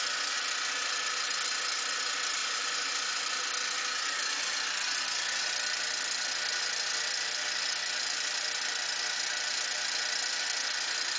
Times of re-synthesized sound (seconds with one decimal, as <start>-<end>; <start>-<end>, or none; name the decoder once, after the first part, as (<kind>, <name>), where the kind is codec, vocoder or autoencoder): 2.4-3.2 (vocoder, Vocos)